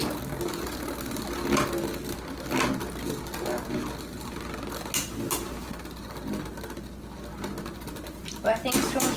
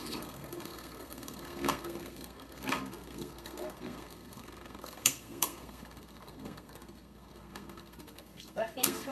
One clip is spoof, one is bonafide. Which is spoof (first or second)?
second